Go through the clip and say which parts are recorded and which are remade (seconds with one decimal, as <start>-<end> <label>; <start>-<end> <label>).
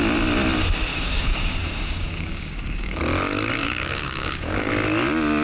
0.0-0.9 recorded; 0.9-3.0 remade; 3.0-3.6 recorded; 3.6-4.7 remade; 4.7-5.4 recorded